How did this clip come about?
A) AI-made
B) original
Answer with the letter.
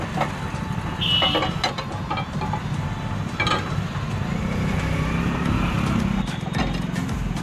B